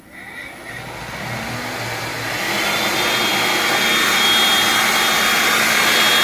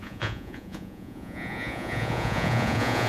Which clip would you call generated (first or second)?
second